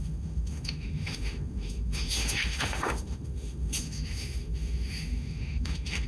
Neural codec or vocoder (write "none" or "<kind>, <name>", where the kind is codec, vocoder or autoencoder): autoencoder, DAC-VAE